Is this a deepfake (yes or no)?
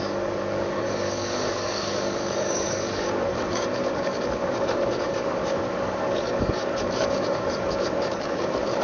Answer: yes